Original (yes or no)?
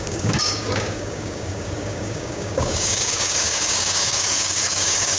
no